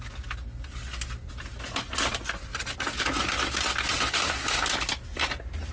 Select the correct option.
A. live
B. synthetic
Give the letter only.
A